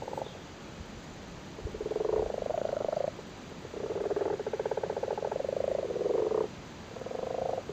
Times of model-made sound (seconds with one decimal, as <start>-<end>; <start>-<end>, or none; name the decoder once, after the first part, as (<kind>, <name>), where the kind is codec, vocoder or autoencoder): 2.5-3.1 (codec, SNAC)